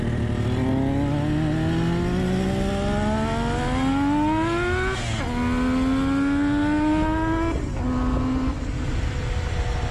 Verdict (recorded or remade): recorded